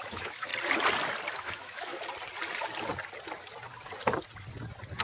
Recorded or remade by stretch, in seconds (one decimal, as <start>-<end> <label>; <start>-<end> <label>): 0.0-0.5 remade; 0.5-1.3 recorded; 1.3-1.9 remade; 1.9-5.0 recorded

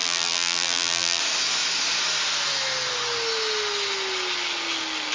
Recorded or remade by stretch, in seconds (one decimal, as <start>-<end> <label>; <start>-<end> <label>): 0.0-1.2 remade; 1.2-5.1 recorded

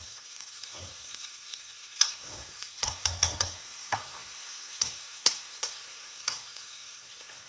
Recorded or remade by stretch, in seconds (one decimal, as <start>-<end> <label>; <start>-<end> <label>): 0.0-7.5 remade